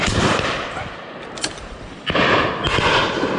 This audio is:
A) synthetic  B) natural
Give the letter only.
B